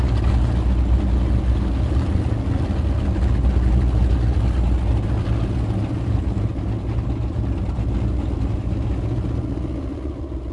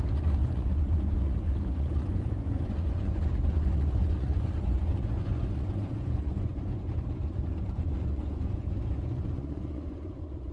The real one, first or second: first